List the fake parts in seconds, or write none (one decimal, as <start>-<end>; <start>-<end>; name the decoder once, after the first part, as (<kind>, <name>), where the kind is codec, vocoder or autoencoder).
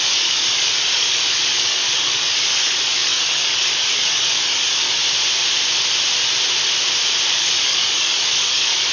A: 0.0-5.0 (codec, DAC); 7.3-8.9